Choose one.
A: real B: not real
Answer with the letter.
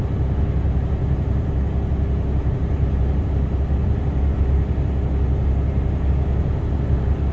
A